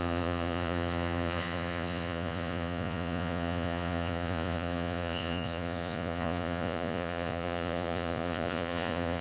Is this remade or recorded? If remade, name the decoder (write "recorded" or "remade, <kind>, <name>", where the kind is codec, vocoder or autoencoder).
remade, vocoder, Vocos